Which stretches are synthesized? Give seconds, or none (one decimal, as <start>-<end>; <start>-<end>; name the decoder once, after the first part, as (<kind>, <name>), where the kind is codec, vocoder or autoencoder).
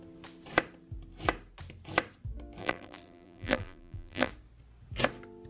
2.6-4.3 (vocoder, BigVGAN v2)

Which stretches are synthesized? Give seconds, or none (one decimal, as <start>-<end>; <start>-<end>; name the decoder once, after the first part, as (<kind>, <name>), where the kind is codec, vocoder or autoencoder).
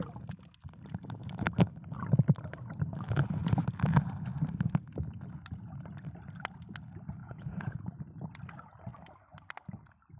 7.2-7.8 (vocoder, Vocos)